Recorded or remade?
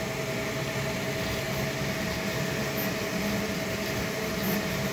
recorded